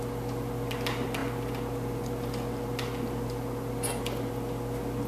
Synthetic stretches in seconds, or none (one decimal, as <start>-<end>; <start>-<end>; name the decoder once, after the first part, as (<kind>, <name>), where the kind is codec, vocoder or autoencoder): none